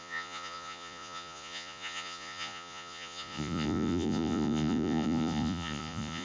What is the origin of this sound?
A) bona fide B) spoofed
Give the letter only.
B